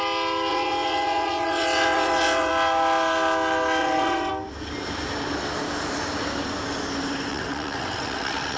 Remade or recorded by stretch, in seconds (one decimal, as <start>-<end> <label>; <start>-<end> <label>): 0.0-0.5 recorded; 0.5-2.5 remade; 2.5-3.8 recorded; 3.8-4.3 remade; 4.3-7.3 recorded; 7.3-8.6 remade